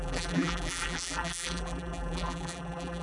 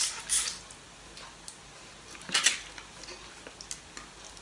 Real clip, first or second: second